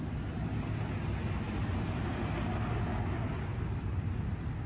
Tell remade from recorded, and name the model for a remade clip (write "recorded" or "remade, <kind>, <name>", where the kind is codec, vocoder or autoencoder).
recorded